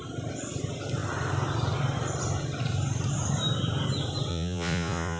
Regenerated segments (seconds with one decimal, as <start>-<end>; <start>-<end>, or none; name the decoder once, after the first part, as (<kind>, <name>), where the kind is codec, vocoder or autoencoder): 4.3-5.2 (vocoder, Vocos)